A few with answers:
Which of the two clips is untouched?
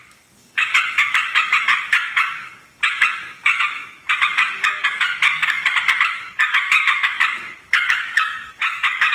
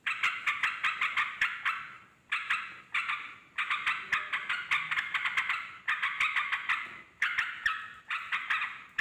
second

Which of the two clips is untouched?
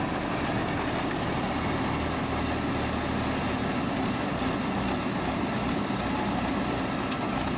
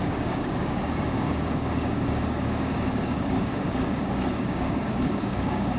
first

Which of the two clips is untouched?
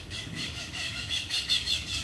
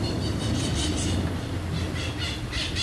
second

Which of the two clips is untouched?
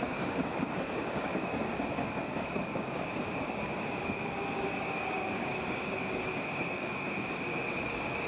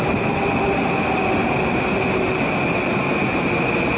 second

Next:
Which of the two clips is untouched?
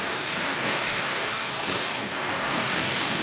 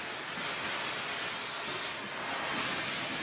second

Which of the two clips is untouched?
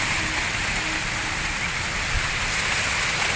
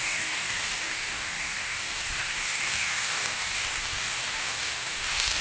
first